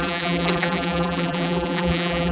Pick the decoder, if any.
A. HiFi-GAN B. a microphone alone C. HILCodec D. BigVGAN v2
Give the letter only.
D